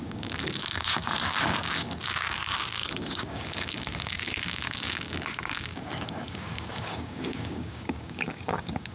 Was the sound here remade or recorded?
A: remade